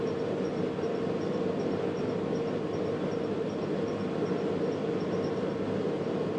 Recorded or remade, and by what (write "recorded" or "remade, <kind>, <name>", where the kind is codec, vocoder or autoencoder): recorded